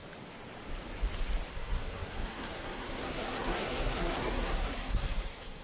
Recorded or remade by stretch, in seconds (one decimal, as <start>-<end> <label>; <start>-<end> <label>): 0.0-1.5 recorded; 1.5-5.6 remade